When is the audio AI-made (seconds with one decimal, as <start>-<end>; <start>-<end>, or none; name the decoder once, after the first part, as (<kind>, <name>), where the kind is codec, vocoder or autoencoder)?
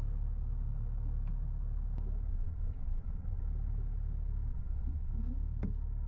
2.3-3.4 (vocoder, Vocos); 4.5-5.1